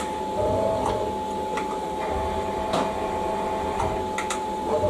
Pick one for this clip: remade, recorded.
recorded